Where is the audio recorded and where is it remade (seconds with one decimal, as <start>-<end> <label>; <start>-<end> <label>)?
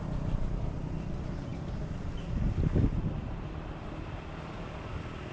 0.0-5.3 remade